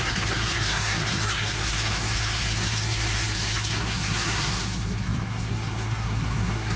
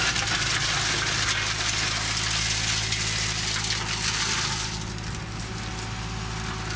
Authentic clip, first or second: second